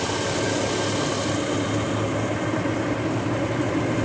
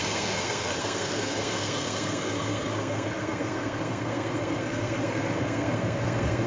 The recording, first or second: first